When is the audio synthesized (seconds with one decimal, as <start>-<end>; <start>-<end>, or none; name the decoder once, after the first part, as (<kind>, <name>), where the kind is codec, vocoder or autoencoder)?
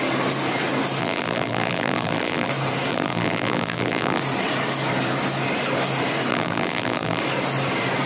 1.0-2.5 (vocoder, BigVGAN v2); 2.9-4.2; 6.3-7.2